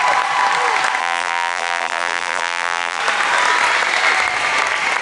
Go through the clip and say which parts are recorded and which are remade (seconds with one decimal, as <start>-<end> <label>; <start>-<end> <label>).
0.0-1.0 recorded; 1.0-3.0 remade; 3.0-5.0 recorded